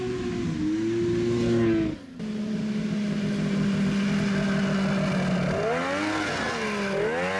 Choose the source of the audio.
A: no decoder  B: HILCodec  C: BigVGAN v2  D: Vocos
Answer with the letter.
A